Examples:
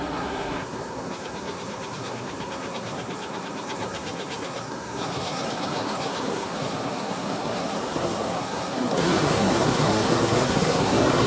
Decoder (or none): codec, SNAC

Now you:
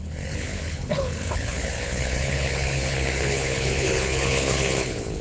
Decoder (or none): codec, HILCodec